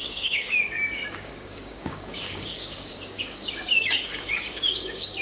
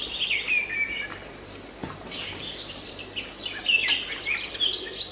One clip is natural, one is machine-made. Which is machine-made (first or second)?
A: first